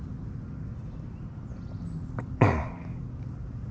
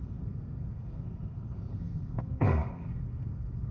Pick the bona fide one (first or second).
first